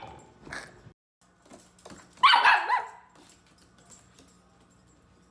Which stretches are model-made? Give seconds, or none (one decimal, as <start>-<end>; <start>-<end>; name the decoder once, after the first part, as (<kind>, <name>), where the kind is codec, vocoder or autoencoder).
none